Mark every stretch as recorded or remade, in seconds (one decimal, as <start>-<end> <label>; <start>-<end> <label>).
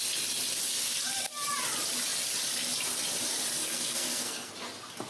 0.0-3.6 recorded; 3.6-4.5 remade; 4.5-5.1 recorded